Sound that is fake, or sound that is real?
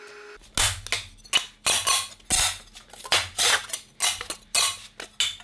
real